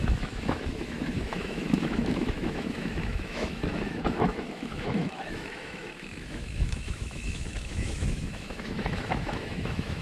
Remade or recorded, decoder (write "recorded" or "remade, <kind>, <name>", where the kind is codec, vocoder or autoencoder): remade, autoencoder, DAC-VAE